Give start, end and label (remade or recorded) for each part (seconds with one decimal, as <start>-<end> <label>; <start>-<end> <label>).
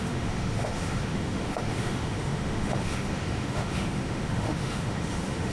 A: 0.0-5.5 remade